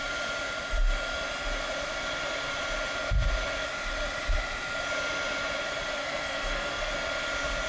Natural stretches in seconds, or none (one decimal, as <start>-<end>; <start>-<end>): 0.0-6.0; 6.9-7.7